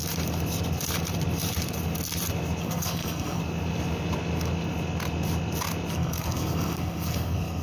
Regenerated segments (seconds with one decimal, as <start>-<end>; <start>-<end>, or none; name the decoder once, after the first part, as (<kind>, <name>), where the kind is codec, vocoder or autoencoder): 2.6-3.4 (codec, SNAC); 5.9-7.6